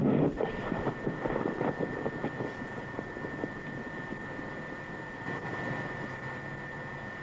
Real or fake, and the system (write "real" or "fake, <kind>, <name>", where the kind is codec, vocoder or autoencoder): fake, vocoder, BigVGAN v2